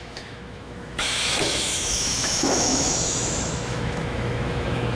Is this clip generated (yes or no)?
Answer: yes